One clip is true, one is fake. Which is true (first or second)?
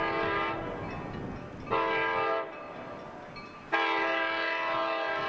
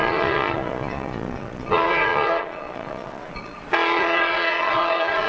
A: first